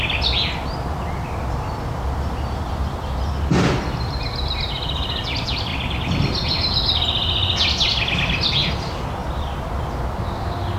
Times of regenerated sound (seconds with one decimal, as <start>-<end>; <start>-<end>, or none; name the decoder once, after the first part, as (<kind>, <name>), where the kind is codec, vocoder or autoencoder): none